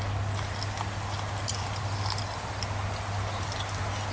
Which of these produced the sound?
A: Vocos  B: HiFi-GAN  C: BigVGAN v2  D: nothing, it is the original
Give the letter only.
D